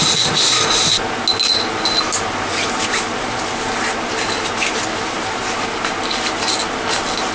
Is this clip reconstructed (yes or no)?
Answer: no